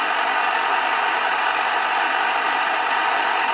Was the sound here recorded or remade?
recorded